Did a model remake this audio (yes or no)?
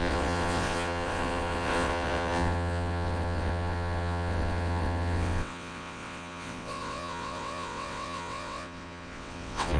yes